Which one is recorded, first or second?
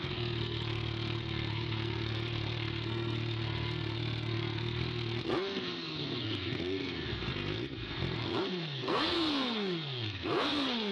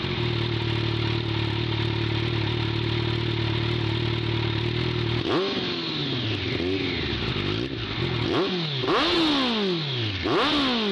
second